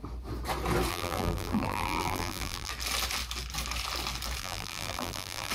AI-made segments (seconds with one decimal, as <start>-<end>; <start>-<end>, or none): 0.9-2.7; 4.4-5.5

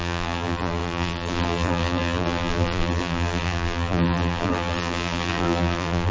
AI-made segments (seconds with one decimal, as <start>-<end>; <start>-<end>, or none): 0.0-6.1

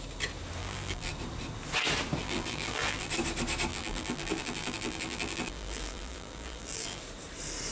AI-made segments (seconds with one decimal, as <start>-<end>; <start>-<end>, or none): 0.6-1.1; 2.2-3.1; 3.7-7.0

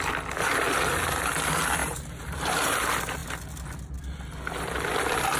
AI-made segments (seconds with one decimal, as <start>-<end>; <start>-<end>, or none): 1.8-2.6

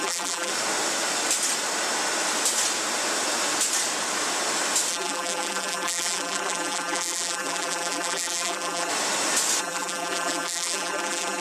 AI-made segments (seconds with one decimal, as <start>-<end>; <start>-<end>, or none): 0.0-0.5; 4.9-8.9; 9.6-11.4

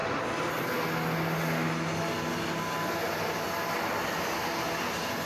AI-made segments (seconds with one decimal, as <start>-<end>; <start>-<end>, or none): none